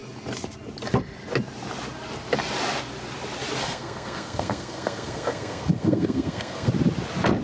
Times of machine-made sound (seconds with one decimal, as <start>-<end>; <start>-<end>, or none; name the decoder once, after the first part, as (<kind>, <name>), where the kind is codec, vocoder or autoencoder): 3.6-6.7 (codec, SNAC)